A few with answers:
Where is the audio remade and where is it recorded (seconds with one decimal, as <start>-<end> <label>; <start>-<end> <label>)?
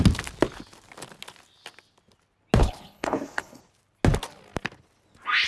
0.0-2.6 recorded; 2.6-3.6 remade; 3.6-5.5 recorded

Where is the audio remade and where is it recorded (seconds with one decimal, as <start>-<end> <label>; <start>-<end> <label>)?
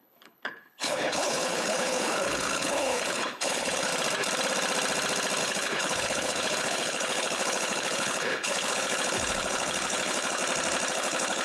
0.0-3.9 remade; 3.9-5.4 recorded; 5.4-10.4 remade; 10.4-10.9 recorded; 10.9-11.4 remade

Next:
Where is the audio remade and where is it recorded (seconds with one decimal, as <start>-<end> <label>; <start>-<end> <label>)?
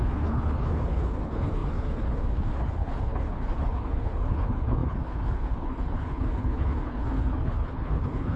0.0-8.4 remade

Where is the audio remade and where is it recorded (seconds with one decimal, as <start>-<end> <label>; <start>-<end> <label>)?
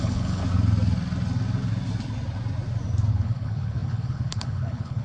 0.0-0.4 remade; 0.4-3.1 recorded; 3.1-5.0 remade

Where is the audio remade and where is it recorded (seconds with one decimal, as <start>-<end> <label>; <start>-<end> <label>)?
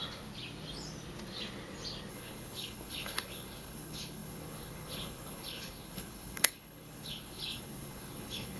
0.0-2.1 recorded; 2.1-8.6 remade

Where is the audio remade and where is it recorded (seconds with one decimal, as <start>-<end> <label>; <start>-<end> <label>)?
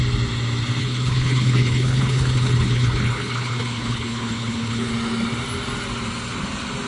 0.0-0.8 recorded; 0.8-4.9 remade; 4.9-6.9 recorded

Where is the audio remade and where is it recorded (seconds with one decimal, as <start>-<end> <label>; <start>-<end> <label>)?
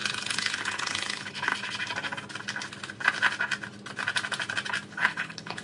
0.0-1.5 remade; 1.5-4.9 recorded; 4.9-5.6 remade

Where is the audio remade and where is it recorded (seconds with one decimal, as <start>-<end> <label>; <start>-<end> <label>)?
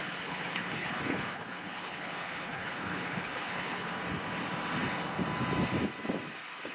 0.0-3.9 remade; 3.9-6.7 recorded